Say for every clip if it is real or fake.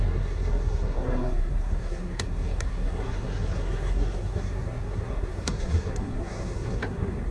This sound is fake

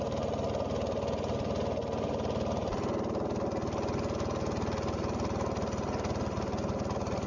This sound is real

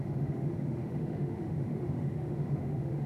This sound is fake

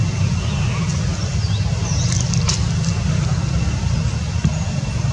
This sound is real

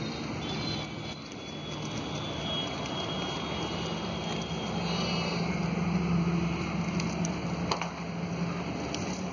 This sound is real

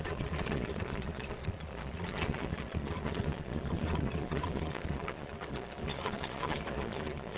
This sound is fake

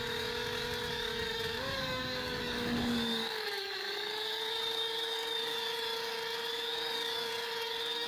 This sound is fake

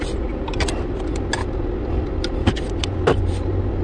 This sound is real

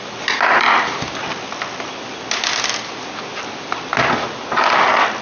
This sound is real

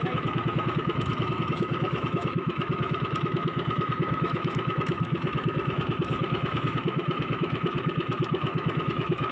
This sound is fake